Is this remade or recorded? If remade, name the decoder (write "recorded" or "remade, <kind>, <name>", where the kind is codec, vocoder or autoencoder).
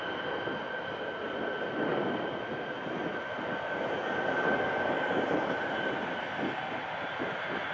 recorded